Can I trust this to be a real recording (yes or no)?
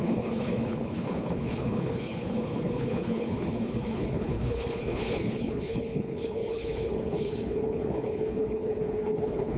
no